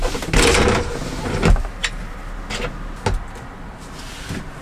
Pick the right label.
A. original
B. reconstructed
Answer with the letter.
A